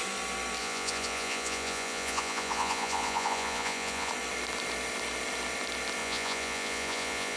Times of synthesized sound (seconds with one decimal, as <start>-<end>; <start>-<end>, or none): 0.6-4.1; 6.0-7.4